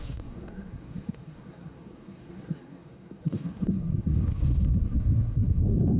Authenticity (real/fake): fake